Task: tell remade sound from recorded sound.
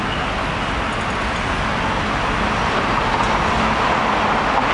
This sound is recorded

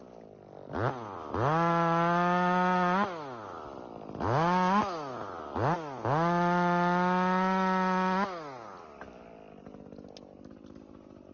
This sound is recorded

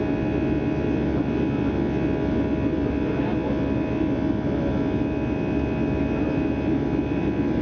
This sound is recorded